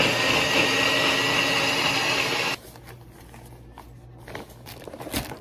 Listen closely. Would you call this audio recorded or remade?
recorded